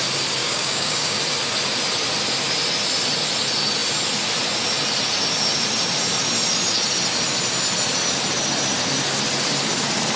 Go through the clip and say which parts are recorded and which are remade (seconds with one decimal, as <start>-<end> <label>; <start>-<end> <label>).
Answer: 0.0-0.4 recorded; 0.4-1.2 remade; 1.2-10.2 recorded